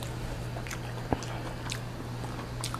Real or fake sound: real